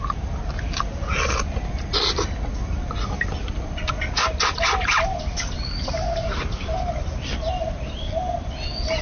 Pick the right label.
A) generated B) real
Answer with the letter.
B